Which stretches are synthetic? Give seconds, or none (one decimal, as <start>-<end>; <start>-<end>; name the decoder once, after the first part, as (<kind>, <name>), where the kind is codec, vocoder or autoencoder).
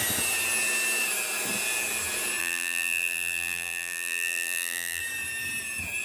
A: 2.4-5.0 (vocoder, BigVGAN v2)